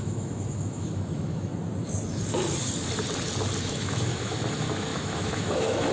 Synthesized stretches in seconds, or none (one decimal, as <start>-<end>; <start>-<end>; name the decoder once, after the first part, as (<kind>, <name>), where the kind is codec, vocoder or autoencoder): 0.0-1.5 (autoencoder, DAC-VAE); 3.6-5.9